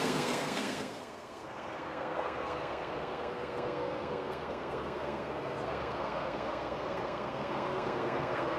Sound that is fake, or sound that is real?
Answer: fake